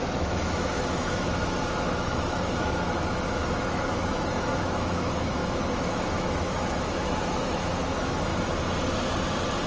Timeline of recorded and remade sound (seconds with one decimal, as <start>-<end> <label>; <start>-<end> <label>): 0.0-8.3 remade; 8.3-9.7 recorded